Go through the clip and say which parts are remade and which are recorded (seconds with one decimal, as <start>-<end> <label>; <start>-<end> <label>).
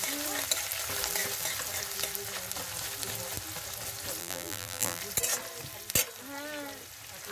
0.0-4.2 recorded; 4.2-5.0 remade; 5.0-7.3 recorded